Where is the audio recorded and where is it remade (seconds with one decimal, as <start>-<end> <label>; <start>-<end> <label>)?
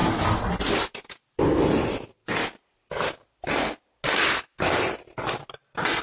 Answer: 0.0-6.0 recorded